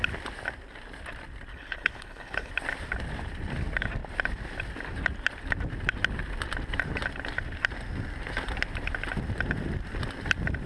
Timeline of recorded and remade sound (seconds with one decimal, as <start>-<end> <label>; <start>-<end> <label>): 0.0-1.5 recorded; 1.5-2.5 remade; 2.5-10.7 recorded